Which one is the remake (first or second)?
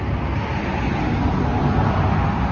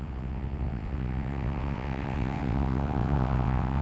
second